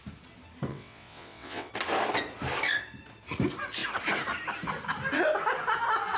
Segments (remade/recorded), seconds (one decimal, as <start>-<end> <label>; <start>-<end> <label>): 0.0-0.7 recorded; 0.7-1.7 remade; 1.7-6.2 recorded